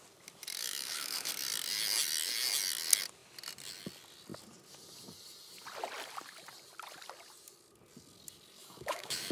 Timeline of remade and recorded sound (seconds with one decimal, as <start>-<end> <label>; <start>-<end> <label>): 0.0-0.6 recorded; 0.6-1.3 remade; 1.3-8.6 recorded; 8.6-9.3 remade

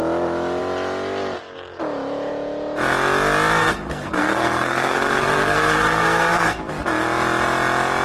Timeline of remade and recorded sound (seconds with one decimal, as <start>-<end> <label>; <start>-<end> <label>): 0.0-3.6 recorded; 3.6-6.7 remade; 6.7-8.0 recorded

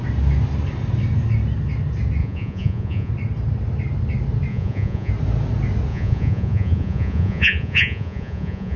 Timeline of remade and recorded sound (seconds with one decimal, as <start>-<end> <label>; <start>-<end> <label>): 0.0-2.2 recorded; 2.2-3.1 remade; 3.1-4.5 recorded; 4.5-5.1 remade; 5.1-5.9 recorded; 5.9-8.8 remade

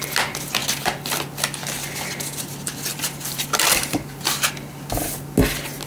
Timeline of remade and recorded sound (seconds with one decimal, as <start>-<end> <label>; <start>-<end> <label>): 0.0-2.9 recorded; 2.9-4.5 remade; 4.5-5.9 recorded

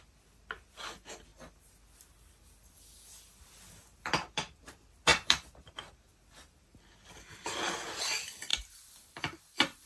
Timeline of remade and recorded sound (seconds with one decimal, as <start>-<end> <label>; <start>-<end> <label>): 0.0-9.9 recorded

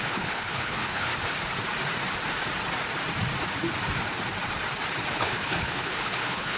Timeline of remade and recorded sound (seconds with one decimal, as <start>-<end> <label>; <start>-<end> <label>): 0.0-1.1 remade; 1.1-5.1 recorded; 5.1-6.6 remade

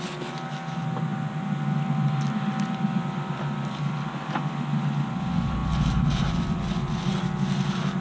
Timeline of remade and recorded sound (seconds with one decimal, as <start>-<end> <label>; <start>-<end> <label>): 0.0-8.0 recorded

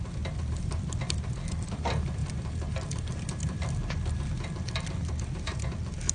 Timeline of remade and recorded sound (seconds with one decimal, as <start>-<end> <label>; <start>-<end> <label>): 0.0-6.1 remade